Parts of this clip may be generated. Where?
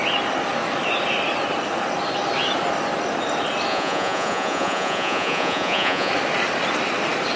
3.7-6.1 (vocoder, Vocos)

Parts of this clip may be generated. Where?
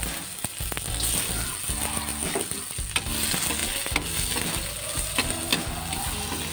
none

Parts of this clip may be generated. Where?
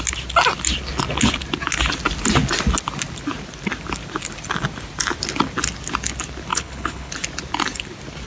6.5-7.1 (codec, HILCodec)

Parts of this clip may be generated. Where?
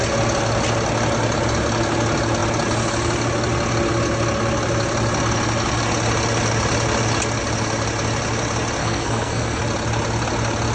8.8-9.6 (codec, SNAC)